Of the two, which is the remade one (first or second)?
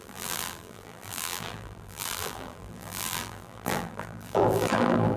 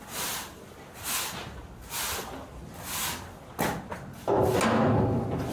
first